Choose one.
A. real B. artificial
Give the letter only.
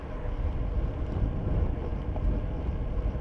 A